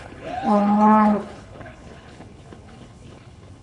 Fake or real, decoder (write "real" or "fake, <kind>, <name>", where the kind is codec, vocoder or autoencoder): fake, codec, HILCodec